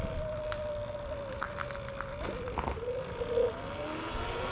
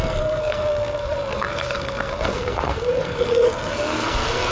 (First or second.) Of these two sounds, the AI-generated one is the second